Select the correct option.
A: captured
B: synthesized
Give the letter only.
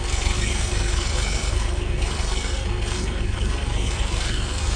B